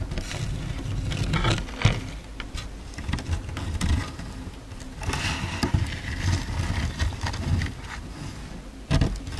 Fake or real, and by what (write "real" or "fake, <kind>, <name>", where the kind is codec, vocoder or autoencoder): real